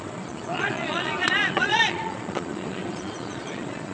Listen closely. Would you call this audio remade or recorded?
remade